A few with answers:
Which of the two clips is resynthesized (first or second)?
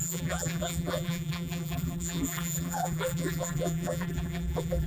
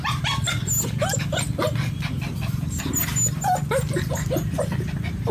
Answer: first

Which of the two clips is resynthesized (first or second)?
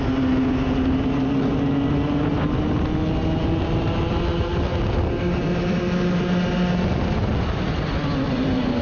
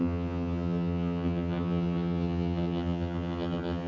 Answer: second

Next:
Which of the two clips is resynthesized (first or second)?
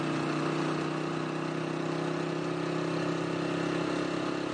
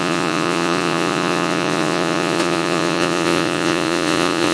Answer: second